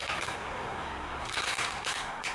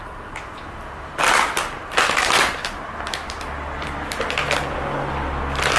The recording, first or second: second